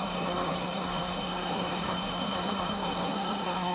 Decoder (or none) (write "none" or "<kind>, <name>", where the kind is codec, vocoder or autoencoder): codec, SNAC